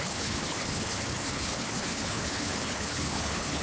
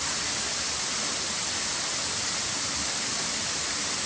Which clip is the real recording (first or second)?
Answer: second